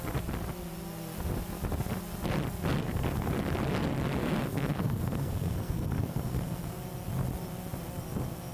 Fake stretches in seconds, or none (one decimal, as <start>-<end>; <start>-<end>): 2.8-3.3; 4.2-6.8